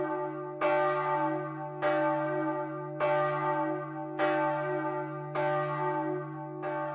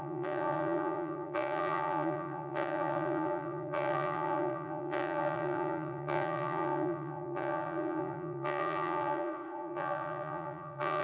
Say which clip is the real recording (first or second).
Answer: first